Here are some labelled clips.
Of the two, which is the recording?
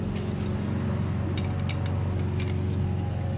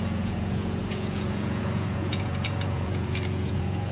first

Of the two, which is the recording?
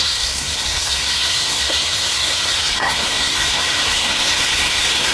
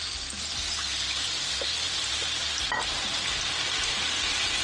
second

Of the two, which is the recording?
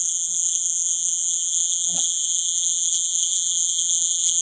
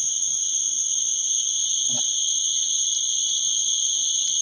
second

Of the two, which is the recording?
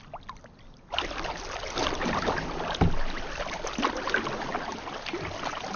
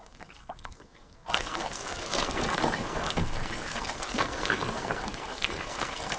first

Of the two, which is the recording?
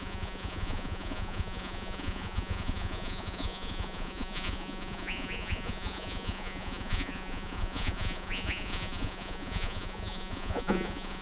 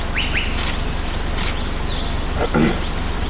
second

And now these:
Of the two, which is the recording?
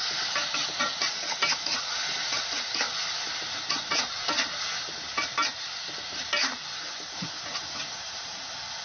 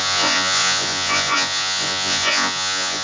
first